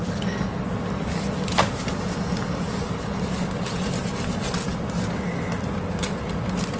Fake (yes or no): no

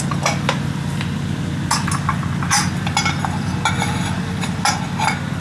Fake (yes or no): no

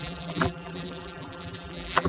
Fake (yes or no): yes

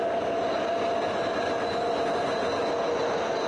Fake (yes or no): no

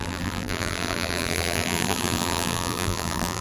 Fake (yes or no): yes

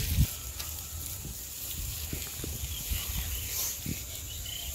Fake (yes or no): no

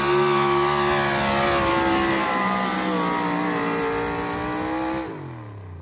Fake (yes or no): no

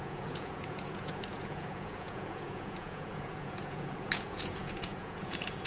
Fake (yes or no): yes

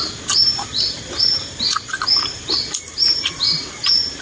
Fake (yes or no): yes